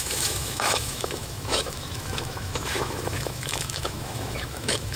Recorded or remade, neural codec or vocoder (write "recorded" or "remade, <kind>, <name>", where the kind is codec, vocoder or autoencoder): remade, autoencoder, DAC-VAE